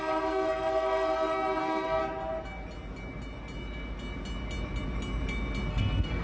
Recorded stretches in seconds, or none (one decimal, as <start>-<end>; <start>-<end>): 2.0-5.7